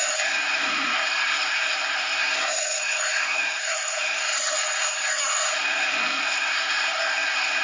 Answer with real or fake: fake